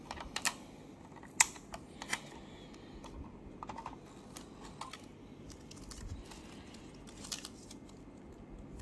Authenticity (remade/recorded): recorded